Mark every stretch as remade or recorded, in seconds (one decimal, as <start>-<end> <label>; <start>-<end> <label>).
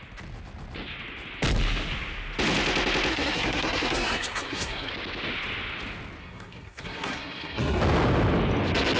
0.0-3.1 recorded; 3.1-4.9 remade; 4.9-6.2 recorded; 6.2-7.8 remade; 7.8-9.0 recorded